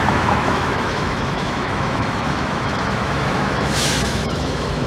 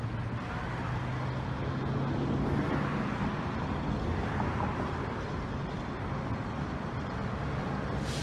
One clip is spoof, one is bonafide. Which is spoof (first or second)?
first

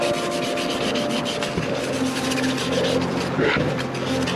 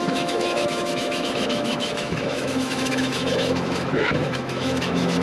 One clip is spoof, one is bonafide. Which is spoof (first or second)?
second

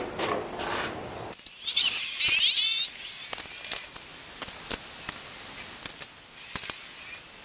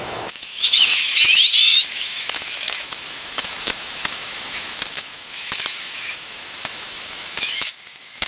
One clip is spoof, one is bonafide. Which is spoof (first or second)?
second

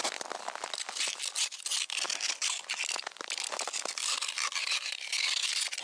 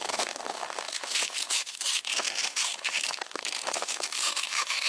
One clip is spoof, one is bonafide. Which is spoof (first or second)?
second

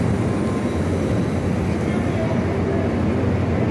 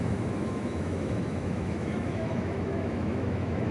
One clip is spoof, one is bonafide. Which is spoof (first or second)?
second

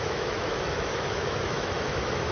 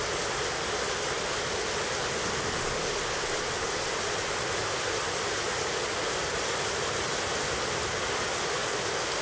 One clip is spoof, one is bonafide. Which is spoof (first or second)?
first